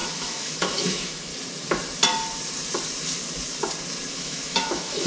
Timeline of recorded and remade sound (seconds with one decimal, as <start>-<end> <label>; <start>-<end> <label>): 0.0-1.3 remade; 1.3-4.1 recorded; 4.1-5.1 remade